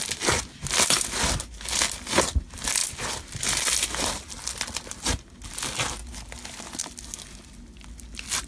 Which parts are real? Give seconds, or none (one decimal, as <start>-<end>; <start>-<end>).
0.0-8.5